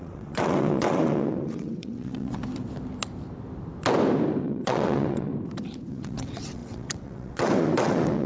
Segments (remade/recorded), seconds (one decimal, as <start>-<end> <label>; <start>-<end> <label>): 0.0-2.4 remade; 2.4-4.4 recorded; 4.4-5.3 remade; 5.3-5.9 recorded; 5.9-8.3 remade